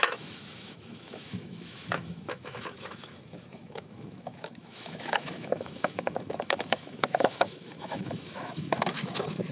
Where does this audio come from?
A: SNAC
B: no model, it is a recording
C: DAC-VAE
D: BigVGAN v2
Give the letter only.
C